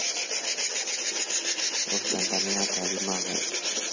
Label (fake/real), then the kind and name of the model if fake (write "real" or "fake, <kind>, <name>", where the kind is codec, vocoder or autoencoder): real